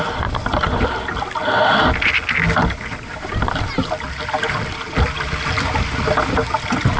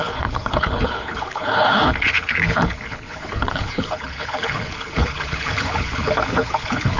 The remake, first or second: second